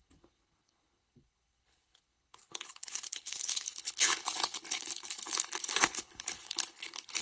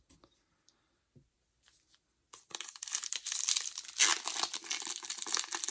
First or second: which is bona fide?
second